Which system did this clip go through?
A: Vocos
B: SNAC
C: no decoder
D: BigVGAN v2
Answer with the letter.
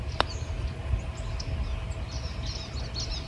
C